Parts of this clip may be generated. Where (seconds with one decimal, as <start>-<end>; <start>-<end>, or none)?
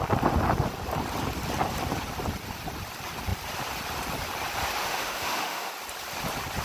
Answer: 4.8-5.7